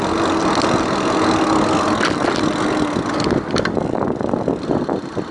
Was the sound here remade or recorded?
recorded